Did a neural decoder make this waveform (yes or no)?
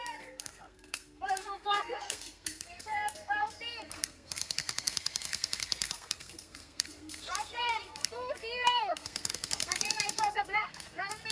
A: yes